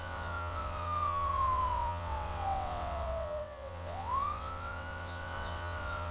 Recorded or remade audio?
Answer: remade